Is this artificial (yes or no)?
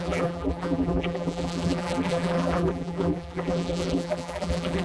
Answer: yes